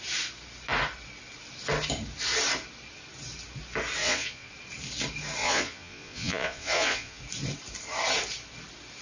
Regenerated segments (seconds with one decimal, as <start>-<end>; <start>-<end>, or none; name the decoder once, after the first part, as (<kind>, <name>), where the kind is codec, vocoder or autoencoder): 4.0-4.5 (vocoder, Vocos); 5.4-7.2